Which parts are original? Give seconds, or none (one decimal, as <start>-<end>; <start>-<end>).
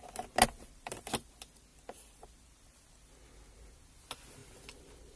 0.0-5.2